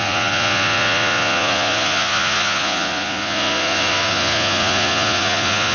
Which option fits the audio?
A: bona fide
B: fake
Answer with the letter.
B